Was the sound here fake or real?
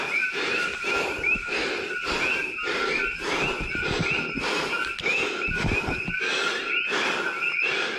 real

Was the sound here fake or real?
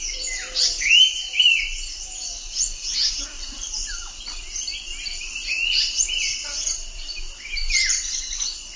fake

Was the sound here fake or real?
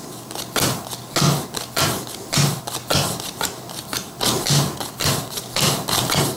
real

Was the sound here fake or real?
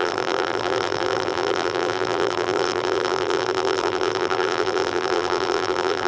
fake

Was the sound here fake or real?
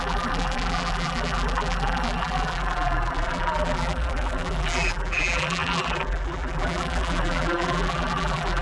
fake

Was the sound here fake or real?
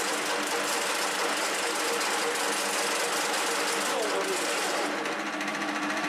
real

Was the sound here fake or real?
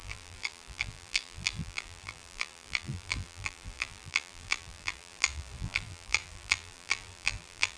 fake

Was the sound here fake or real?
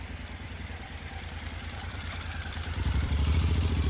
fake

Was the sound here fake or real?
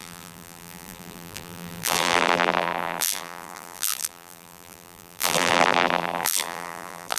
fake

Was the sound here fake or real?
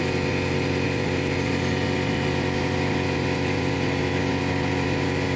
real